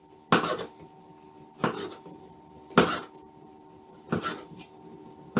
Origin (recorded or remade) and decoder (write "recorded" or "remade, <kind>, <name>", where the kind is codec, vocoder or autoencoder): recorded